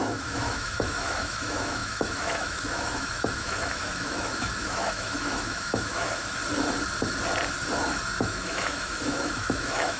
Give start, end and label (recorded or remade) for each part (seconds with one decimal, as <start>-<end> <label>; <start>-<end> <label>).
0.0-6.4 remade; 6.4-8.2 recorded; 8.2-10.0 remade